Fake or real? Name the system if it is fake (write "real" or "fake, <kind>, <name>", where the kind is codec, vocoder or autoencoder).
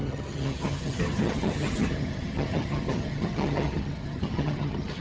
fake, vocoder, HiFi-GAN